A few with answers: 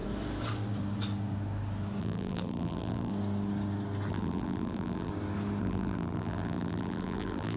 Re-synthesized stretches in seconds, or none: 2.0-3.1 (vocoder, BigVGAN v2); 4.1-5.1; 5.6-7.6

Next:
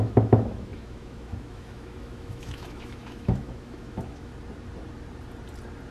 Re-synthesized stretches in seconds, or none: 0.0-4.3 (autoencoder, DAC-VAE)

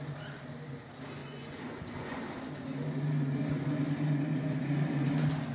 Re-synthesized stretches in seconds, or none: 1.2-2.2 (vocoder, Vocos)

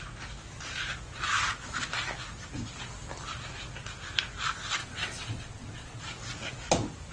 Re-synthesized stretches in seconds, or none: 4.8-6.0 (vocoder, WaveNeXt)

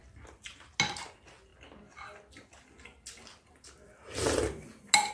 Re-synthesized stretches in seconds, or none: none

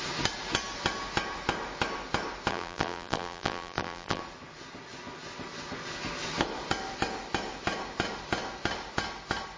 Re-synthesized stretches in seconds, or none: 2.5-4.2 (vocoder, BigVGAN v2)